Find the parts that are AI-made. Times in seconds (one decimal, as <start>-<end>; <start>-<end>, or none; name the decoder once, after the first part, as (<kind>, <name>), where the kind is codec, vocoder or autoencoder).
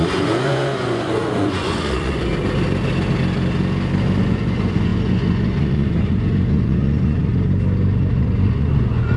0.0-2.3 (vocoder, Vocos); 4.2-7.3; 8.1-9.2